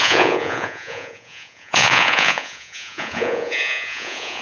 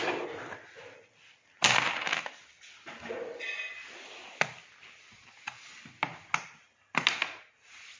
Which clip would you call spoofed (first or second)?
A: first